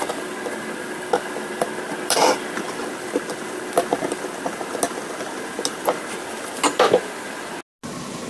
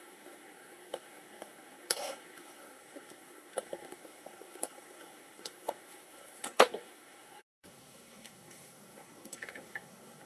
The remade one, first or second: second